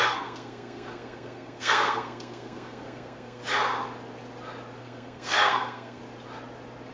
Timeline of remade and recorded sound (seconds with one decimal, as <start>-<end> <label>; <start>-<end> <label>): 0.0-3.4 remade; 3.4-4.8 recorded; 4.8-6.0 remade; 6.0-6.9 recorded